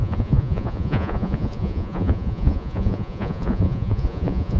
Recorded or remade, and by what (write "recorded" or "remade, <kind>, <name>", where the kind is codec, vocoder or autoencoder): remade, vocoder, Vocos